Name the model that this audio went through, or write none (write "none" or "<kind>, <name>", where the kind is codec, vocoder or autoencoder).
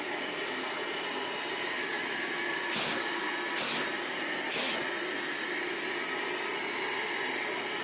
none